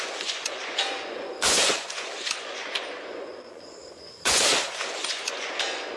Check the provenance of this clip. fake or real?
fake